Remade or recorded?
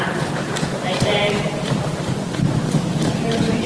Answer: remade